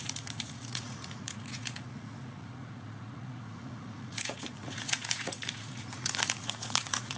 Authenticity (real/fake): fake